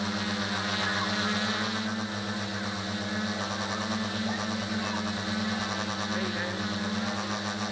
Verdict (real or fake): real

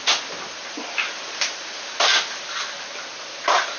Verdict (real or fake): real